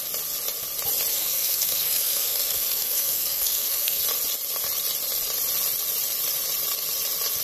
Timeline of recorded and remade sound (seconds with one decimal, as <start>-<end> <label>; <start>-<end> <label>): 0.0-1.1 recorded; 1.1-4.0 remade; 4.0-7.4 recorded